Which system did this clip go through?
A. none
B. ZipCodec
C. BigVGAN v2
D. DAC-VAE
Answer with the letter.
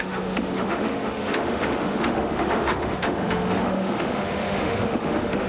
D